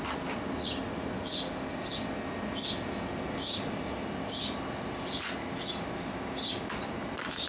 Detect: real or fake real